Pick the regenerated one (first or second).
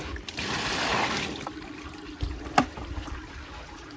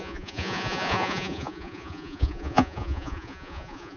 second